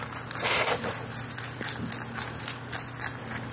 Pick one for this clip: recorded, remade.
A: recorded